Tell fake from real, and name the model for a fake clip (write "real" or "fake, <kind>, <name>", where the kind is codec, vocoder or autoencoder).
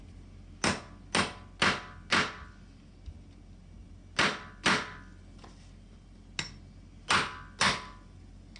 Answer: real